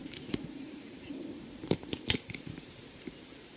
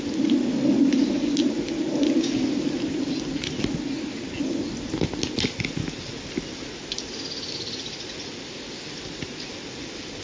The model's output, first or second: first